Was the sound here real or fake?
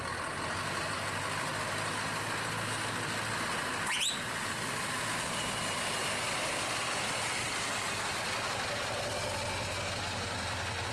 real